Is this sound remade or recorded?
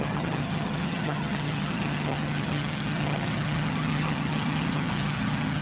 remade